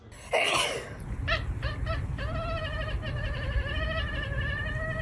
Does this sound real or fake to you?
real